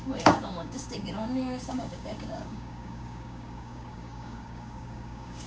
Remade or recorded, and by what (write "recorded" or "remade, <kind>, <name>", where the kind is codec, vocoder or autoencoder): remade, codec, DAC